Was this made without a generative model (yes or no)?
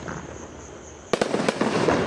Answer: yes